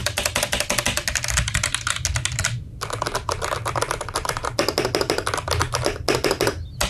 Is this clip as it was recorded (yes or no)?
yes